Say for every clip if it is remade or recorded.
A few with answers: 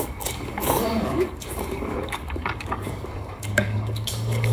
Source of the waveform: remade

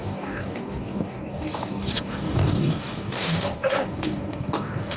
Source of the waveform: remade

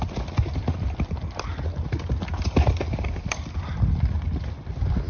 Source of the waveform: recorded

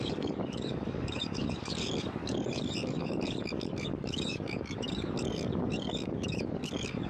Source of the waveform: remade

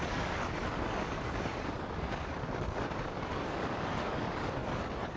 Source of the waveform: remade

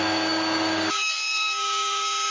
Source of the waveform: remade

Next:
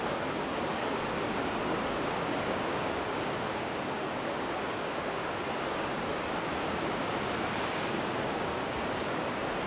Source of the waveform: remade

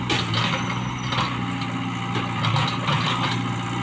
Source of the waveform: recorded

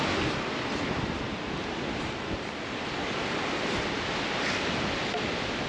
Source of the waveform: recorded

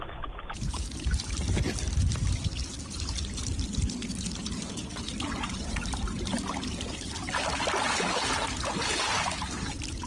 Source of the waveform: recorded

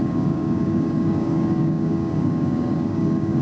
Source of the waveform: remade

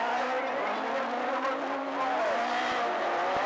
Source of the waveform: recorded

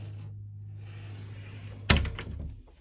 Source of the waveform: recorded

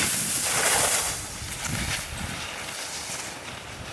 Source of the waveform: recorded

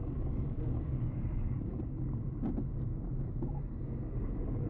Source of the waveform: remade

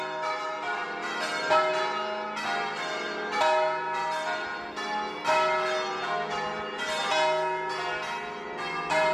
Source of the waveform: recorded